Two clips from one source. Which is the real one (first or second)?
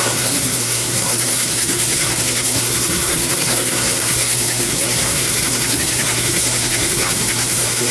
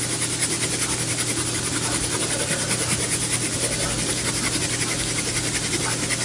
second